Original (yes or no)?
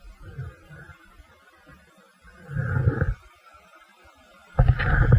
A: yes